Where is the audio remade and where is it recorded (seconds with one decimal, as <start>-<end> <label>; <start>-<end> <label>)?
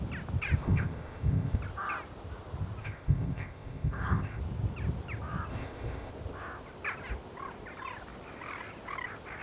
0.0-0.6 recorded; 0.6-1.6 remade; 1.6-2.8 recorded; 2.8-4.4 remade; 4.4-5.5 recorded; 5.5-6.1 remade; 6.1-9.4 recorded